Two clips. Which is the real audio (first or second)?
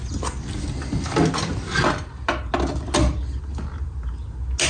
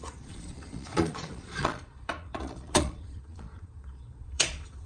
first